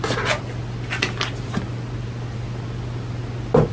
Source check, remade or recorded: recorded